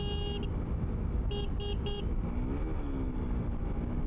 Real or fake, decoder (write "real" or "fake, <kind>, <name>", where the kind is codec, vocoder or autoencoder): real